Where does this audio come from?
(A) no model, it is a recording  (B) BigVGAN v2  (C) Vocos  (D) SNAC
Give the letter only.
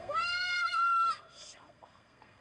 D